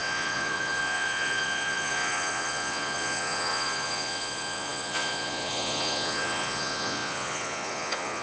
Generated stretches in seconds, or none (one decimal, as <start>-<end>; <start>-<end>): 0.0-8.2